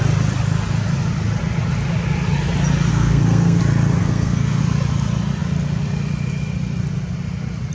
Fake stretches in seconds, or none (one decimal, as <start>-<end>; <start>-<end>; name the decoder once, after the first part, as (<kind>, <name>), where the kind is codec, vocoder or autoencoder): 2.9-3.6 (codec, SNAC); 4.0-4.6